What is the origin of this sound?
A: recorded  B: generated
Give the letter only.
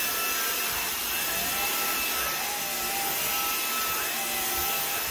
A